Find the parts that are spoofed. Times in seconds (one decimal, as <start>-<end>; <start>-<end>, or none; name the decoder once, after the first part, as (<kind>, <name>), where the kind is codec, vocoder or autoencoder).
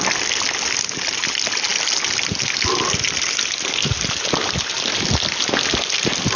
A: none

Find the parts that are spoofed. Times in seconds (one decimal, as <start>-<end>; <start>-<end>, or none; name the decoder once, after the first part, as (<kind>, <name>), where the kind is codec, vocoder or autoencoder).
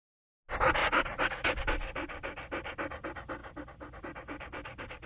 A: 0.8-1.6 (vocoder, Vocos)